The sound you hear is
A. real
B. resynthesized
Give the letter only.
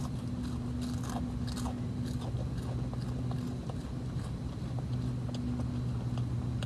A